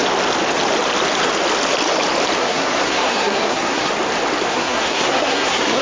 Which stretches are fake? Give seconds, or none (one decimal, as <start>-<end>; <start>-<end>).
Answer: 2.4-3.9; 4.5-5.8